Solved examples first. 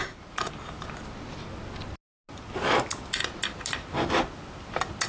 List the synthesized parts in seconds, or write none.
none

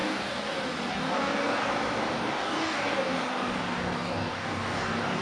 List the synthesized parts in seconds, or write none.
0.0-0.5 (codec, DAC); 0.9-1.7; 2.1-5.2

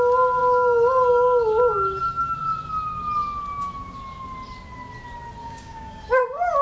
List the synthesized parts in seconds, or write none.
5.4-6.0 (codec, DAC)

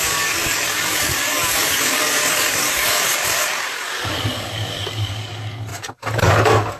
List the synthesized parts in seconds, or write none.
0.0-6.8 (codec, DAC)

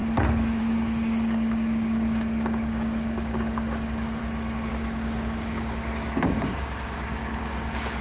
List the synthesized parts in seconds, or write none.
0.0-4.2 (codec, DAC); 4.7-8.0

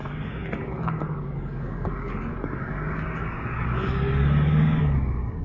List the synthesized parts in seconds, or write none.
0.0-5.4 (codec, DAC)

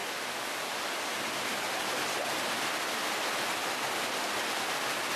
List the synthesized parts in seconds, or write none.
none